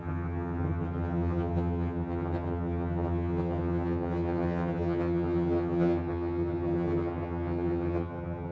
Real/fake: fake